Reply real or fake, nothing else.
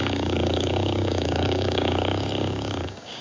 fake